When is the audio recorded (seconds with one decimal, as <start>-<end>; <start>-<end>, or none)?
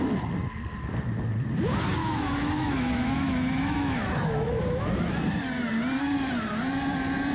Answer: 0.0-2.0; 4.6-7.3